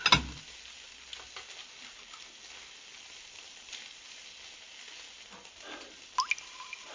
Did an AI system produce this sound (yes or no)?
no